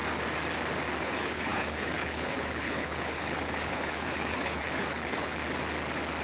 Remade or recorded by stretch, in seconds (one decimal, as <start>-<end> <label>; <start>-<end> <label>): 0.0-1.0 recorded; 1.0-5.4 remade; 5.4-6.2 recorded

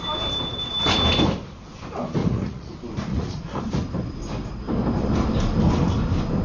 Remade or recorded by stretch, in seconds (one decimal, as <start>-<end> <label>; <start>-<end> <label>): 0.0-2.2 recorded; 2.2-2.7 remade; 2.7-3.1 recorded; 3.1-3.6 remade; 3.6-6.4 recorded

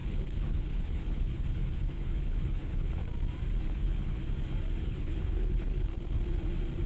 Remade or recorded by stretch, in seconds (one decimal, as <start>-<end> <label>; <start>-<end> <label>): 0.0-3.0 remade; 3.0-3.6 recorded; 3.6-4.2 remade; 4.2-4.8 recorded; 4.8-5.9 remade; 5.9-6.9 recorded

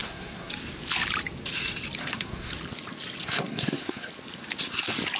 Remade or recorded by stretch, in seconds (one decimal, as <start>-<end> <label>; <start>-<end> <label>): 0.0-0.5 remade; 0.5-2.0 recorded; 2.0-2.5 remade; 2.5-3.2 recorded; 3.2-4.1 remade; 4.1-5.2 recorded

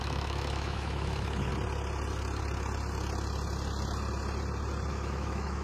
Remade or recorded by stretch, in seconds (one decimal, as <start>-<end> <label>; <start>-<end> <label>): 0.0-1.5 remade; 1.5-4.9 recorded; 4.9-5.6 remade